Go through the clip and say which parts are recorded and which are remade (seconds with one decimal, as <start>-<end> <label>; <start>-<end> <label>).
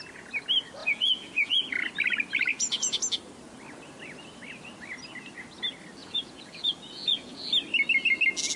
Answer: 0.0-0.8 recorded; 0.8-1.6 remade; 1.6-2.5 recorded; 2.5-3.0 remade; 3.0-6.0 recorded; 6.0-7.5 remade; 7.5-8.6 recorded